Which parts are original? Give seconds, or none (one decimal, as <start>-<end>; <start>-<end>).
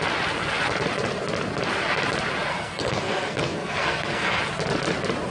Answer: 0.0-2.5; 4.4-5.3